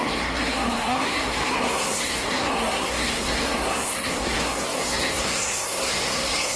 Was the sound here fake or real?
fake